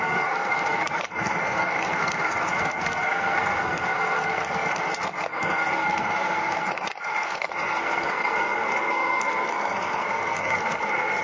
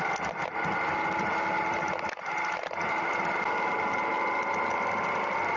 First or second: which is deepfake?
first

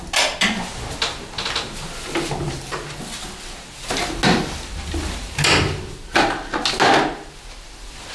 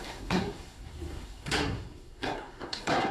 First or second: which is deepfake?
second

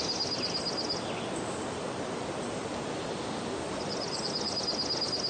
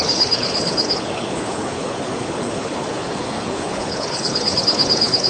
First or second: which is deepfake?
second